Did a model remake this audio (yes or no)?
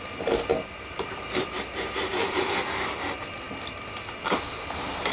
no